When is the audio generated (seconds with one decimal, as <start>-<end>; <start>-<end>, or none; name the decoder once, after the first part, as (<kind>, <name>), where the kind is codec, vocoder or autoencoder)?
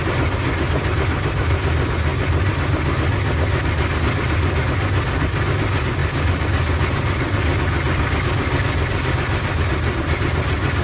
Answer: none